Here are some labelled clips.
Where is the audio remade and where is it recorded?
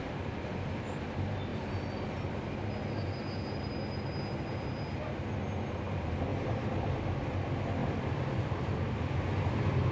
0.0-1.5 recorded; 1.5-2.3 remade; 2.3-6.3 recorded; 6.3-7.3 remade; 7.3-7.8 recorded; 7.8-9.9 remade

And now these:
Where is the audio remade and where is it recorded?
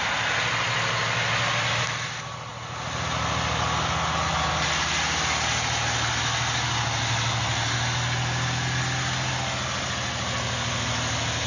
0.0-11.5 recorded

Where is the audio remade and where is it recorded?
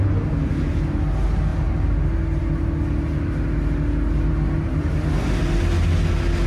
0.0-6.5 recorded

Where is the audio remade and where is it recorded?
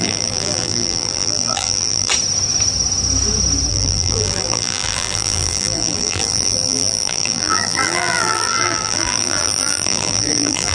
0.0-2.1 remade; 2.1-3.7 recorded; 3.7-10.7 remade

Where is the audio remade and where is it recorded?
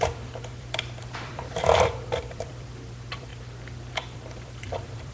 0.0-3.3 remade; 3.3-3.9 recorded; 3.9-5.1 remade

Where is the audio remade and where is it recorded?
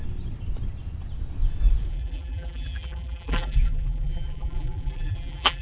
0.0-1.9 recorded; 1.9-5.6 remade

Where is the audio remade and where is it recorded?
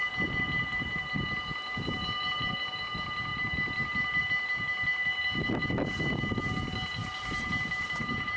0.0-0.7 recorded; 0.7-2.5 remade; 2.5-3.3 recorded; 3.3-4.2 remade; 4.2-7.0 recorded; 7.0-8.4 remade